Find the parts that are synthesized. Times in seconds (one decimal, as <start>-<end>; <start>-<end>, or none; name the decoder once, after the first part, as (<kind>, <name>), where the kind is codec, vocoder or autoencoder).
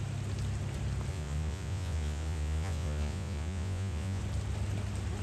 1.1-4.2 (vocoder, Vocos)